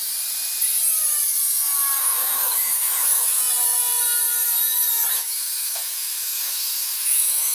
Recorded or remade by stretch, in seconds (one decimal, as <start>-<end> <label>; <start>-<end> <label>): 0.0-2.0 recorded; 2.0-3.4 remade; 3.4-5.1 recorded; 5.1-7.5 remade